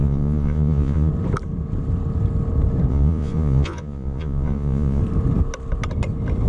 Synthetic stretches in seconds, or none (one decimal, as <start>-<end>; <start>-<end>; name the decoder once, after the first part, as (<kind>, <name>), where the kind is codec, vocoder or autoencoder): 0.0-1.1 (vocoder, Vocos); 2.9-5.0